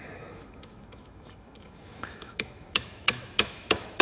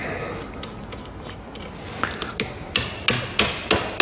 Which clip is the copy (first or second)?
first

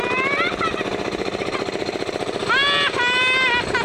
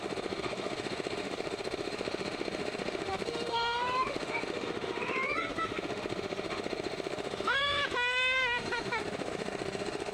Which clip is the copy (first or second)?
second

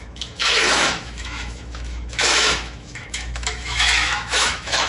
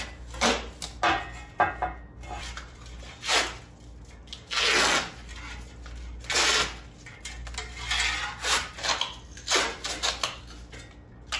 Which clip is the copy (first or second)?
first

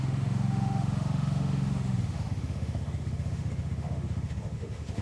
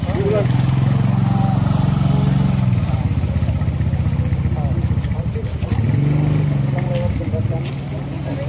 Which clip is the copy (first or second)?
first